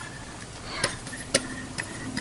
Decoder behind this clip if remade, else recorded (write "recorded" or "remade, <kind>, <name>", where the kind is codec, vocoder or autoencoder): remade, vocoder, BigVGAN v2